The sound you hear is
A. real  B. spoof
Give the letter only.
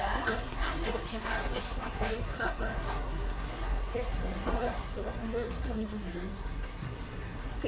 B